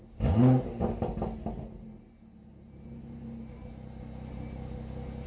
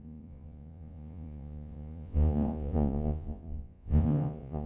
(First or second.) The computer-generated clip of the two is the second